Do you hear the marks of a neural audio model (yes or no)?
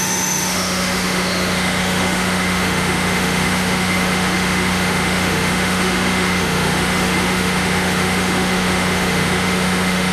yes